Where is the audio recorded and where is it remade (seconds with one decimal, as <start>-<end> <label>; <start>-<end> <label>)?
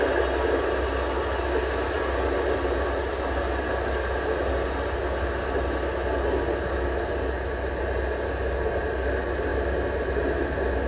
0.0-10.9 recorded